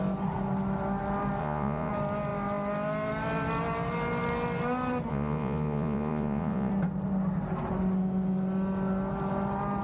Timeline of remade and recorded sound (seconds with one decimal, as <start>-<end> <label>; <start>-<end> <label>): 0.0-1.4 recorded; 1.4-1.9 remade; 1.9-5.1 recorded; 5.1-6.7 remade; 6.7-9.8 recorded